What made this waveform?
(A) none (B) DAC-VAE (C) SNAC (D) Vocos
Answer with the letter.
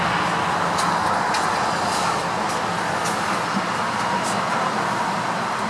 A